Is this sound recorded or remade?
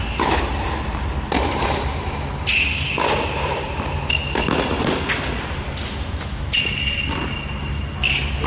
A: recorded